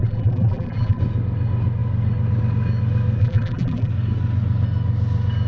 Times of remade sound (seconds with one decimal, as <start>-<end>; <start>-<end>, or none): 0.0-1.0; 3.2-3.9